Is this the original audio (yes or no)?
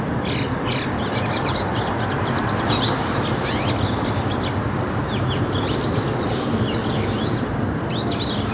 no